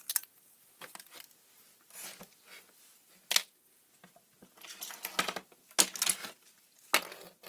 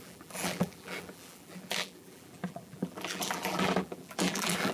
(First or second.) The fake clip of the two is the second